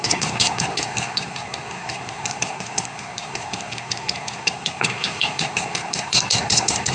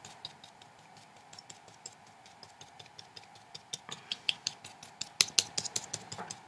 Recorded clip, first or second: second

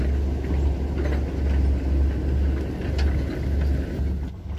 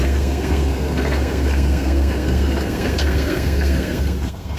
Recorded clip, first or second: first